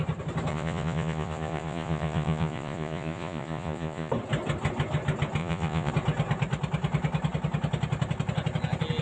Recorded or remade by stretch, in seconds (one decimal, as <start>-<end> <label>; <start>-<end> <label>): 0.0-0.5 recorded; 0.5-4.1 remade; 4.1-5.4 recorded; 5.4-5.9 remade; 5.9-9.0 recorded